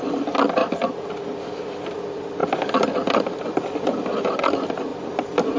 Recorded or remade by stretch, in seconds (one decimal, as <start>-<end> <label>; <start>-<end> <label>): 0.0-0.6 recorded; 0.6-1.1 remade; 1.1-4.9 recorded; 4.9-5.6 remade